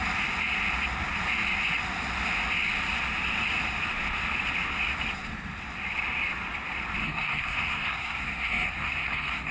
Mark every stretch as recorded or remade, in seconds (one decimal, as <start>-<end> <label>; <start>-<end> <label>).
0.0-7.0 recorded; 7.0-9.5 remade